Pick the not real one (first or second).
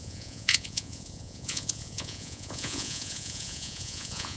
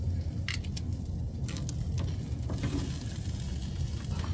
first